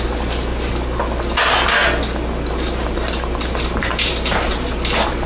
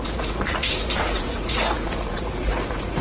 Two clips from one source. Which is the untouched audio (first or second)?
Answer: first